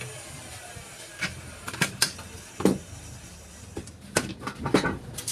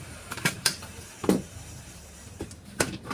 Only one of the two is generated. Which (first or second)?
second